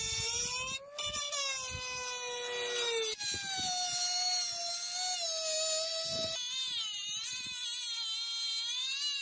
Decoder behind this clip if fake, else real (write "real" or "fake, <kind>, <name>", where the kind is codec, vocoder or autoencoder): real